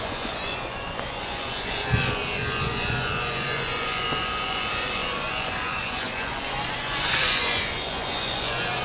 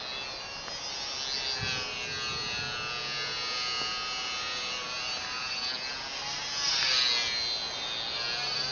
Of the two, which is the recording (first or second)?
second